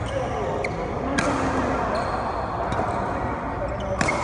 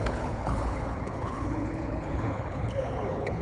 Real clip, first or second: first